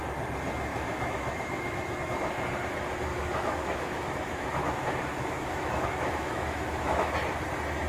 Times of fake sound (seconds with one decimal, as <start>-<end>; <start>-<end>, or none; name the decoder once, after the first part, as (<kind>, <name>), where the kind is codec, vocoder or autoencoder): 0.7-2.0 (autoencoder, DAC-VAE); 3.1-7.1